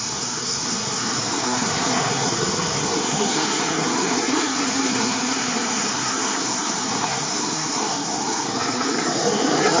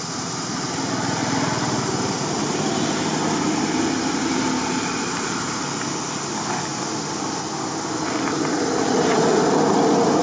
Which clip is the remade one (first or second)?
first